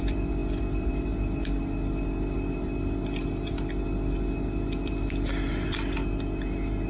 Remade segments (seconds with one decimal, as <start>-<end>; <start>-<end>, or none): none